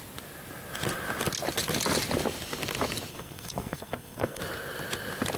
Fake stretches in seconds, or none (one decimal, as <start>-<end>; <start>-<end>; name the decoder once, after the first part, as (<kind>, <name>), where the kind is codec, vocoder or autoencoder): 3.1-4.4 (codec, SNAC)